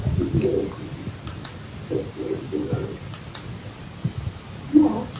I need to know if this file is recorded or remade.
recorded